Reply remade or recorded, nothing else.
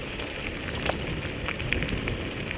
recorded